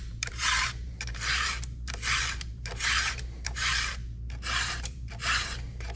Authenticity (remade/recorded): remade